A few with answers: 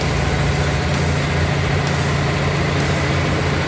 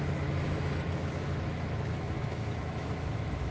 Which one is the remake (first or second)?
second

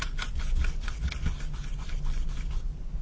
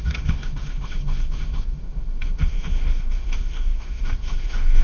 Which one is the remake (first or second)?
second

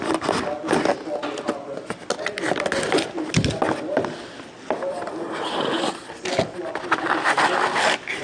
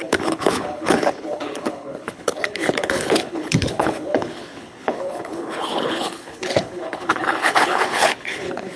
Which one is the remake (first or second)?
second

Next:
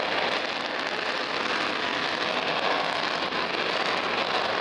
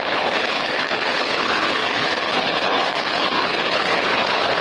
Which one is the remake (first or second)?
second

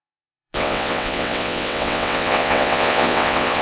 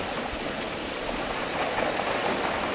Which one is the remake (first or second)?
first